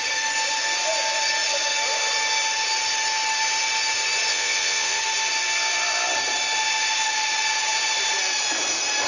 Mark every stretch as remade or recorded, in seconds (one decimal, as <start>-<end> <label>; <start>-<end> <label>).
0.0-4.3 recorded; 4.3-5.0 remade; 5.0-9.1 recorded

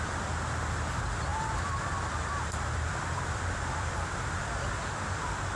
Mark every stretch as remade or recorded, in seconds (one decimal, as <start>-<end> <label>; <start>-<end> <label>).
0.0-1.3 recorded; 1.3-4.7 remade; 4.7-5.6 recorded

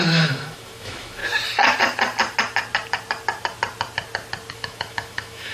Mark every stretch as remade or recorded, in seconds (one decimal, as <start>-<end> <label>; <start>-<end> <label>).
0.0-1.2 remade; 1.2-4.5 recorded; 4.5-5.5 remade

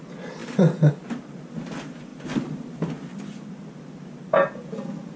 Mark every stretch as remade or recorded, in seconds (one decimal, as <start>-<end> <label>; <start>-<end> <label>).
0.0-5.2 recorded

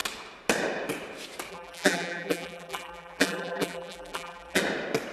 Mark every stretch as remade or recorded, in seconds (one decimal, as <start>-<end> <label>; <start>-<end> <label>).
0.0-1.5 recorded; 1.5-4.6 remade; 4.6-5.1 recorded